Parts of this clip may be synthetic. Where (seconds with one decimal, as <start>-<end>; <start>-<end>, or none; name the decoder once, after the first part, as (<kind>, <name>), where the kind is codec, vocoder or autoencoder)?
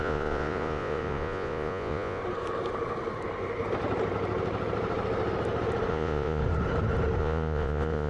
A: 0.0-2.2 (vocoder, Vocos); 5.9-6.4; 7.2-8.1